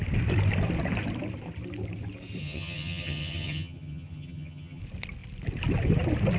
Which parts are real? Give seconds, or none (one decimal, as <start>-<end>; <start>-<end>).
0.0-2.4; 4.8-6.4